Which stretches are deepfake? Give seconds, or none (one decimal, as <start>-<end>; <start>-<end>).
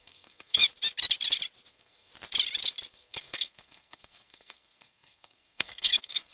0.0-0.6; 1.7-2.1; 2.9-6.3